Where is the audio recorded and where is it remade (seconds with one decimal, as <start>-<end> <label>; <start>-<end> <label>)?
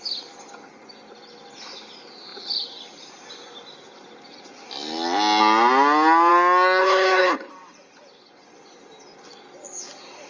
0.0-6.8 recorded; 6.8-7.5 remade; 7.5-10.3 recorded